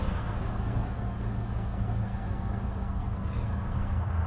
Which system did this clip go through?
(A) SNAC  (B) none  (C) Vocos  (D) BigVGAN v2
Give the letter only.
A